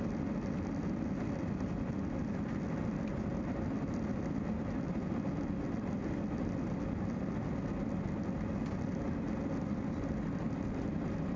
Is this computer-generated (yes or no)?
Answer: no